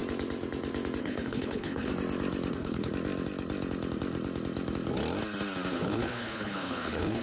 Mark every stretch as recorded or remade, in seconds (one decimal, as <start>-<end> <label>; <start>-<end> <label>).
0.0-1.0 recorded; 1.0-1.9 remade; 1.9-2.5 recorded; 2.5-2.9 remade; 2.9-5.7 recorded; 5.7-7.2 remade